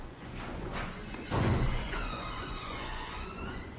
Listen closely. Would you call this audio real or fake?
fake